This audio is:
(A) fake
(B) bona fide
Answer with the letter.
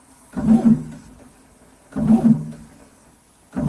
B